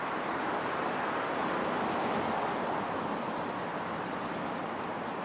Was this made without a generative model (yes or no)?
no